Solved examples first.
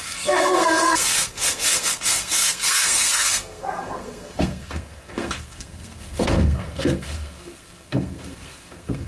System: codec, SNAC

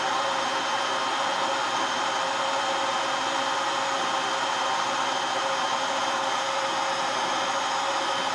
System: none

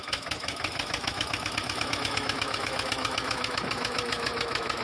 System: autoencoder, DAC-VAE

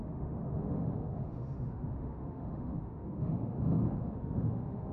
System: autoencoder, DAC-VAE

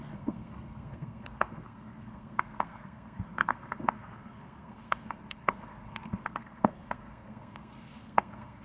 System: codec, SNAC